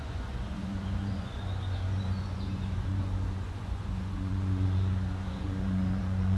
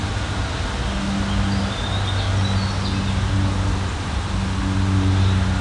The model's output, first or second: first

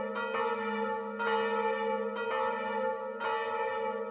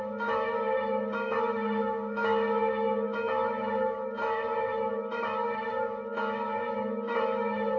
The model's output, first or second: second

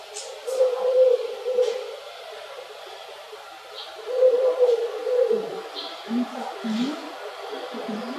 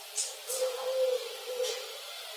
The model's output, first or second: first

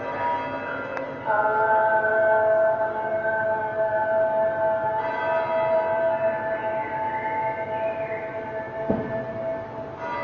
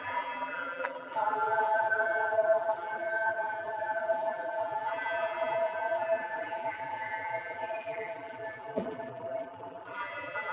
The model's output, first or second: second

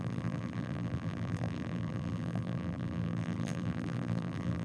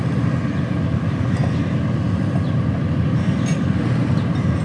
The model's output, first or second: first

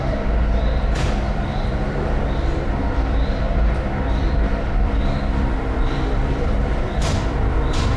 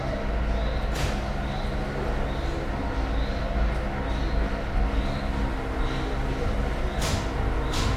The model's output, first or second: first